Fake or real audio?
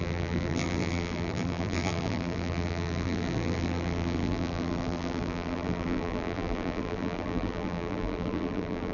fake